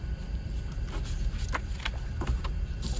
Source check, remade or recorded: recorded